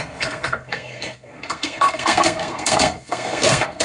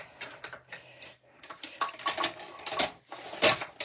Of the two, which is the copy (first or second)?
first